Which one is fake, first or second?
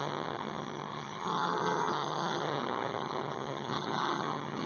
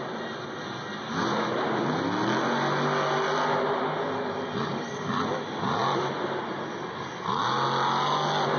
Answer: first